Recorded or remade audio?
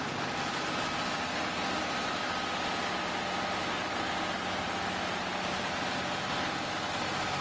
recorded